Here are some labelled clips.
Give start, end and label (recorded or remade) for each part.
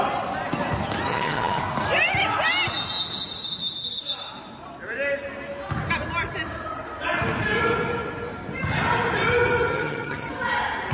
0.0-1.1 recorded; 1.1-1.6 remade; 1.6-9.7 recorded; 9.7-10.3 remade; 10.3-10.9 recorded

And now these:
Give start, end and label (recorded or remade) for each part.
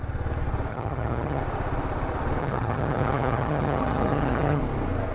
0.0-0.7 recorded; 0.7-1.4 remade; 1.4-2.4 recorded; 2.4-4.6 remade; 4.6-5.1 recorded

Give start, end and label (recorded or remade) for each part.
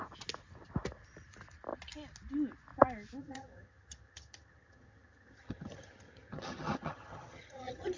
0.0-3.2 recorded; 3.2-8.0 remade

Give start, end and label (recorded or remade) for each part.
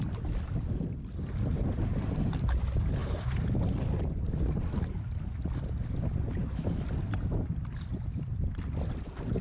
0.0-9.4 recorded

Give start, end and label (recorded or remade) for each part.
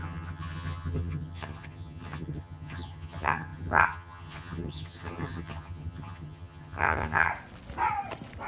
0.0-7.3 remade; 7.3-8.5 recorded